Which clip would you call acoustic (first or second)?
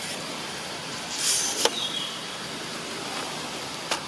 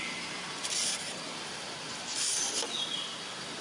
second